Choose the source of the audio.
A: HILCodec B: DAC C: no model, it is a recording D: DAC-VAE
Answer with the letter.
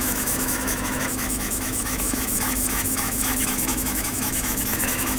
D